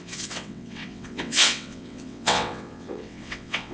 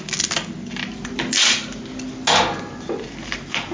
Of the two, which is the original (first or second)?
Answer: second